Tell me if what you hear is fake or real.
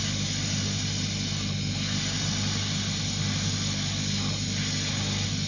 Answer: real